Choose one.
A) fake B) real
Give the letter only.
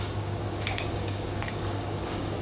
A